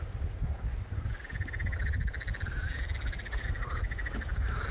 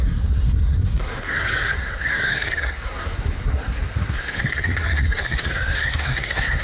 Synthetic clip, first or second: second